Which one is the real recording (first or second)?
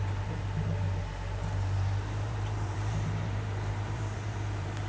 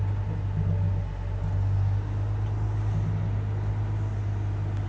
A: second